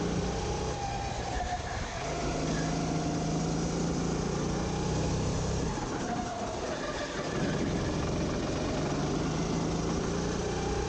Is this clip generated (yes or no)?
no